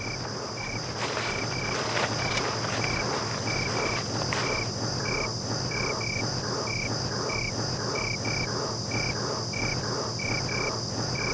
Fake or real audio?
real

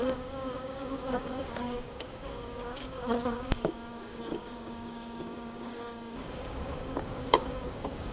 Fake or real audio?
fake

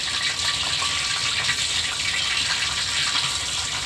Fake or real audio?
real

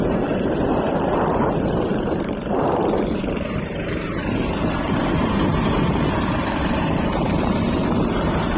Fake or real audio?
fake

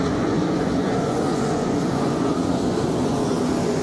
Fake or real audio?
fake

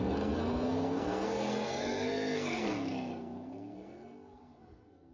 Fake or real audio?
fake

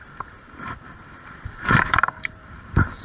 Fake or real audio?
fake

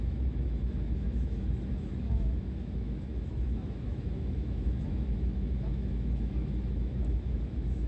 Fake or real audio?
fake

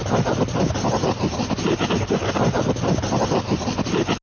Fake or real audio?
real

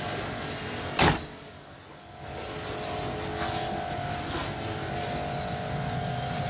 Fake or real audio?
real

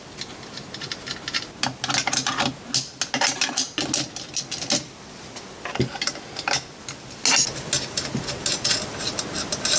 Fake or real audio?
real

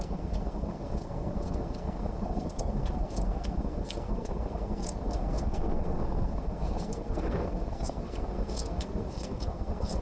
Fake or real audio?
fake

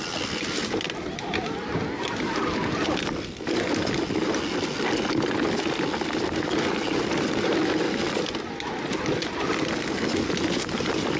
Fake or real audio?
real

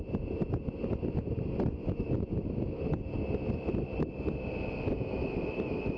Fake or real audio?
real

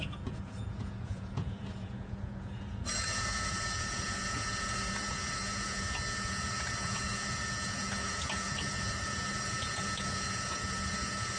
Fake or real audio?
fake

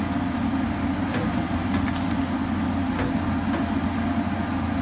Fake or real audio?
real